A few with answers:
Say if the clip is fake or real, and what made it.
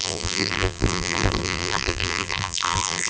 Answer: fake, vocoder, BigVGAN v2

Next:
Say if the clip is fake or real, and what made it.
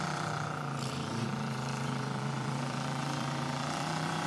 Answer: fake, vocoder, BigVGAN v2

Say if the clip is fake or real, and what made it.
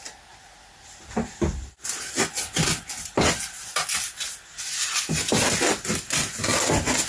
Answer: real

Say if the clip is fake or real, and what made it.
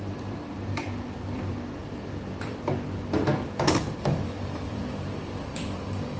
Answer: fake, vocoder, BigVGAN v2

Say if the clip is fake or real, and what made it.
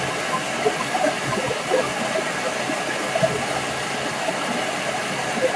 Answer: real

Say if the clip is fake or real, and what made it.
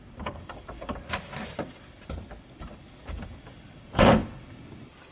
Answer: fake, vocoder, BigVGAN v2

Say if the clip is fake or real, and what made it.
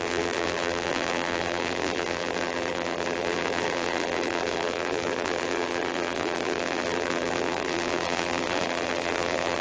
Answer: fake, vocoder, BigVGAN v2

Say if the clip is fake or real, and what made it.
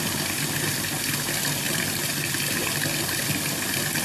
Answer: real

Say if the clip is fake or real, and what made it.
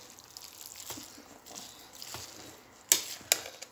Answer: real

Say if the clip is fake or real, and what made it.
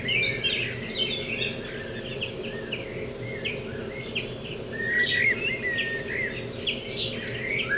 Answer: real